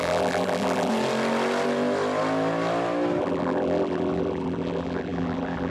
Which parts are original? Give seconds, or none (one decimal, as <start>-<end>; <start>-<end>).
0.9-3.2